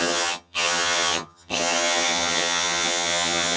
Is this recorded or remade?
remade